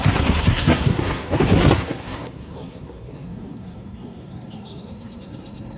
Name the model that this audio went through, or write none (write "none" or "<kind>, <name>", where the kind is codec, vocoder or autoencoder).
codec, SNAC